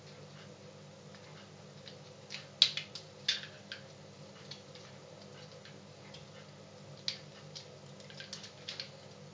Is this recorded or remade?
recorded